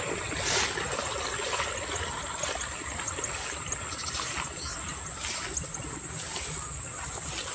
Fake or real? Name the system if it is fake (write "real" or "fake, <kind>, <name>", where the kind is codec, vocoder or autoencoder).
real